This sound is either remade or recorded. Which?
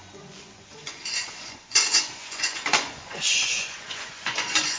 remade